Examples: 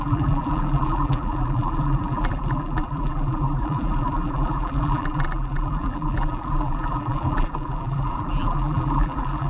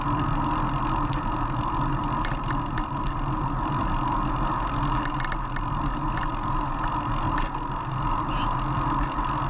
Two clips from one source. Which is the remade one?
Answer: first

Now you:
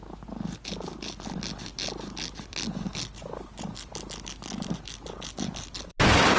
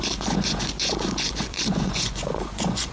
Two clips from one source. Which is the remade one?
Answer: second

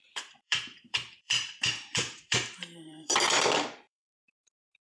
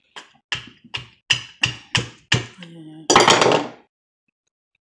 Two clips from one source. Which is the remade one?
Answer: first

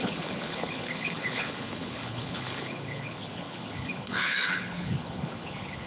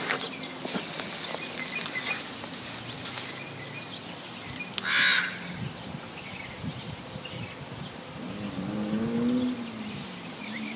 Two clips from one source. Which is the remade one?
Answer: first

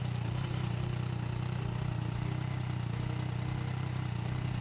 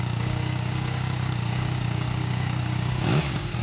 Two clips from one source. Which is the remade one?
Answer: second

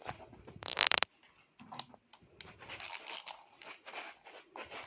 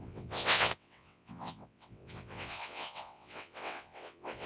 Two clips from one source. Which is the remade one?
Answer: second